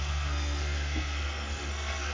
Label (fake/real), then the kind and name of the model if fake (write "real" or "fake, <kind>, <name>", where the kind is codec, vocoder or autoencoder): fake, codec, SNAC